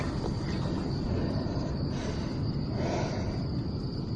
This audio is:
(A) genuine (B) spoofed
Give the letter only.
A